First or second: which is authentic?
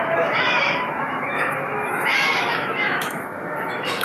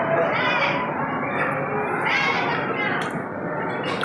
second